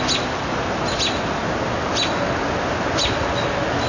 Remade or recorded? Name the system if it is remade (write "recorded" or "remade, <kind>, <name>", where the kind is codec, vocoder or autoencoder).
recorded